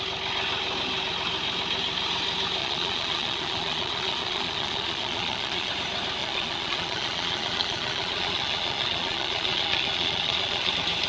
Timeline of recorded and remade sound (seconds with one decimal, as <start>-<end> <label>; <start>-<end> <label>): 0.0-2.6 recorded; 2.6-5.7 remade; 5.7-6.2 recorded; 6.2-10.7 remade; 10.7-11.1 recorded

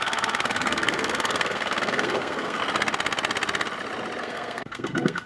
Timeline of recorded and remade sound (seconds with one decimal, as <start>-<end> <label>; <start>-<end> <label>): 0.0-2.6 remade; 2.6-4.2 recorded; 4.2-5.3 remade

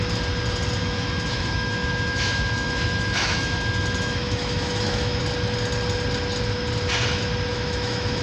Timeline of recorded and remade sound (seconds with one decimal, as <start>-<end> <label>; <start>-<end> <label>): 0.0-0.8 recorded; 0.8-5.2 remade; 5.2-7.5 recorded; 7.5-8.2 remade